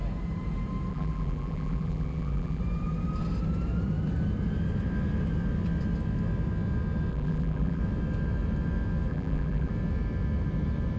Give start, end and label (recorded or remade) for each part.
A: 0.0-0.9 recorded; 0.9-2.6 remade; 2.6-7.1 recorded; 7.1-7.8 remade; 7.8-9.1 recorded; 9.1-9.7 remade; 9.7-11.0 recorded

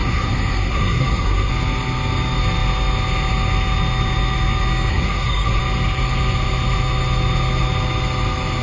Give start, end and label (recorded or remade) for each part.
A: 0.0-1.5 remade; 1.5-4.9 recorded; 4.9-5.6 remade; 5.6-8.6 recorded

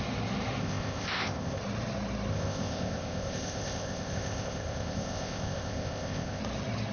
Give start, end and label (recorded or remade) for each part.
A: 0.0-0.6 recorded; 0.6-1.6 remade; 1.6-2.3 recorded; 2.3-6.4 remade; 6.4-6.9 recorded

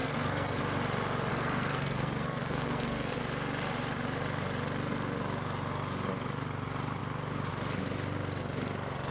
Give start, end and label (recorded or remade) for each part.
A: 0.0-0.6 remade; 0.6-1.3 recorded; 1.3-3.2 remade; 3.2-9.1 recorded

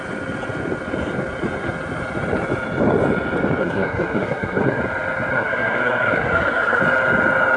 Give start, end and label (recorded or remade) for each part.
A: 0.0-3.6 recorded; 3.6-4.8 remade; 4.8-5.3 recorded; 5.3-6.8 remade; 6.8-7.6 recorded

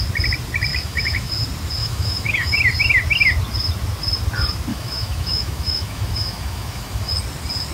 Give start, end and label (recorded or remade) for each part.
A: 0.0-0.7 recorded; 0.7-1.3 remade; 1.3-1.8 recorded; 1.8-2.6 remade; 2.6-4.7 recorded; 4.7-7.1 remade; 7.1-7.7 recorded

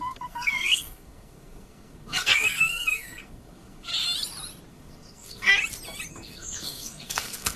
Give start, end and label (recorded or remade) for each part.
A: 0.0-3.9 remade; 3.9-4.7 recorded; 4.7-5.5 remade; 5.5-6.1 recorded; 6.1-7.6 remade

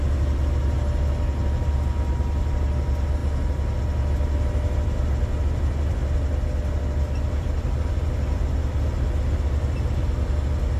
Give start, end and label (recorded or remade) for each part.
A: 0.0-10.8 recorded